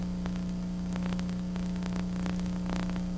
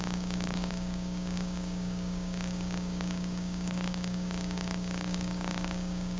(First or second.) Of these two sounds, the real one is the first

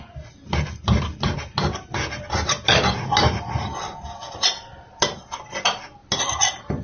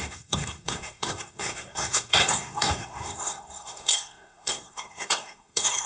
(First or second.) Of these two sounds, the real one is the first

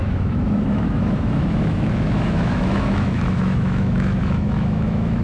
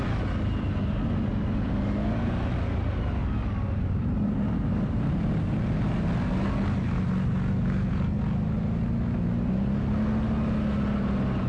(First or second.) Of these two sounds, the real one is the second